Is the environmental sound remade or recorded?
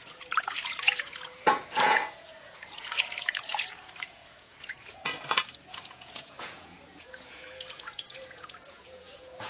remade